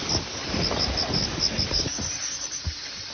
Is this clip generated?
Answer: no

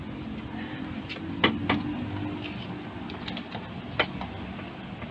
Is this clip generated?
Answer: no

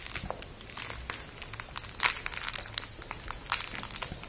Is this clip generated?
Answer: no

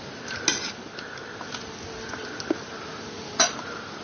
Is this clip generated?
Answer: no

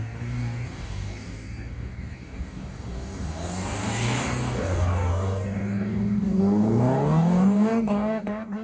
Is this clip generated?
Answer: yes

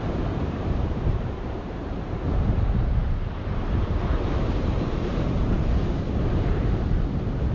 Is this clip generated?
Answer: yes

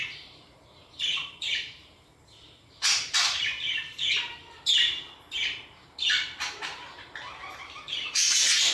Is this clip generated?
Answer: yes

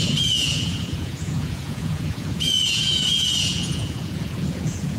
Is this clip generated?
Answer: yes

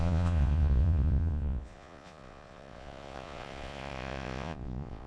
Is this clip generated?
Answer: yes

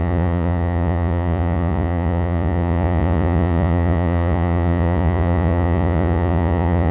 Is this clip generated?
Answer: yes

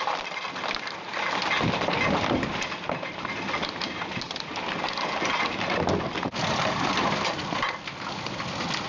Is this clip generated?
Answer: no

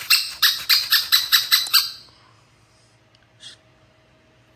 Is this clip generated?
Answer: no